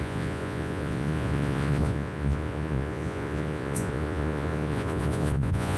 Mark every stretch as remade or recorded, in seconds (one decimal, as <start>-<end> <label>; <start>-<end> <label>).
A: 0.0-5.8 remade